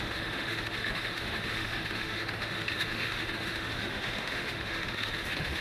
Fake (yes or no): yes